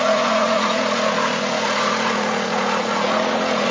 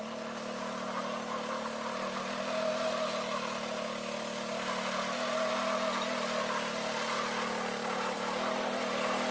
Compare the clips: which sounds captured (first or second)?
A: second